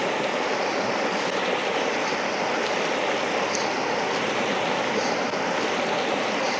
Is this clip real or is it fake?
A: real